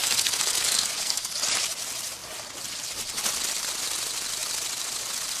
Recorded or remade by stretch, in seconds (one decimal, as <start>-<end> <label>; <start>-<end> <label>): 0.0-1.3 remade; 1.3-5.4 recorded